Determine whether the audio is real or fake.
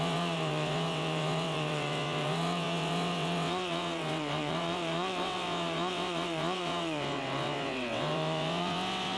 fake